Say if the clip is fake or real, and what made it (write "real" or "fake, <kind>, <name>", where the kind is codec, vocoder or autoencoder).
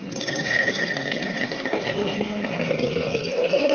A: fake, codec, SNAC